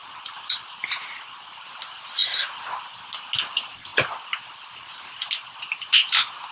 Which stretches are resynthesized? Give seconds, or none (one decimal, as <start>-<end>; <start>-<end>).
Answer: none